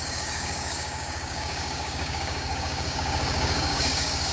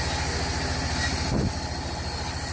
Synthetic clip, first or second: first